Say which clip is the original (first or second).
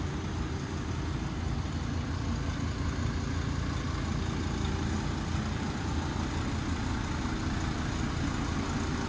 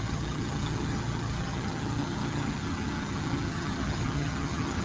first